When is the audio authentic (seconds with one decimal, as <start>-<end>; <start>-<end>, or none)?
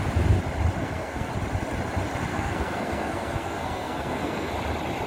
0.0-0.8; 1.3-2.3; 4.5-5.1